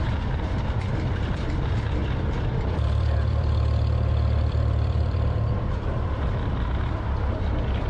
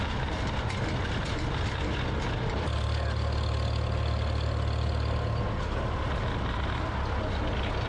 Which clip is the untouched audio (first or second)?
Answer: second